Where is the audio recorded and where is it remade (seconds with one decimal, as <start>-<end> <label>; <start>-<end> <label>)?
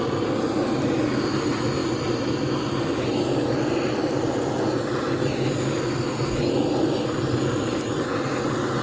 0.0-8.8 recorded